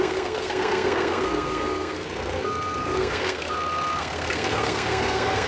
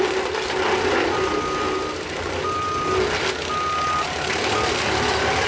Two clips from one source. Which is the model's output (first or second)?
first